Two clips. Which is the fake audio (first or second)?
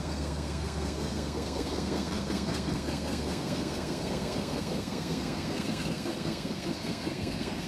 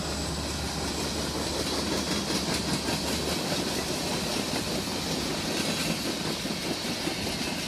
first